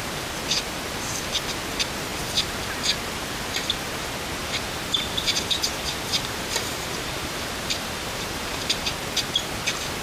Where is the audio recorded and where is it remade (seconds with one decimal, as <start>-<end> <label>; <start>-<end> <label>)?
0.0-4.4 recorded; 4.4-8.9 remade; 8.9-10.0 recorded